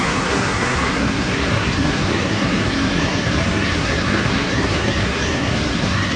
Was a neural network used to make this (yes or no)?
yes